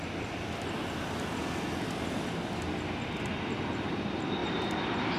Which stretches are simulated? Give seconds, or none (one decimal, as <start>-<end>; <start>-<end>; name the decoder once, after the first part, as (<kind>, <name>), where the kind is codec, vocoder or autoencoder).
4.4-5.2 (vocoder, BigVGAN v2)